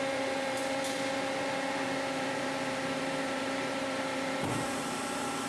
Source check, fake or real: fake